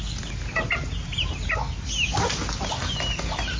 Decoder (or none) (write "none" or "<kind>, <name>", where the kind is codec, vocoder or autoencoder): none